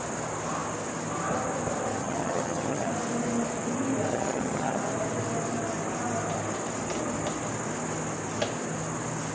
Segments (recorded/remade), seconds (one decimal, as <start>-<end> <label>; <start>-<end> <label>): 0.0-2.0 recorded; 2.0-2.9 remade; 2.9-4.1 recorded; 4.1-4.8 remade; 4.8-9.3 recorded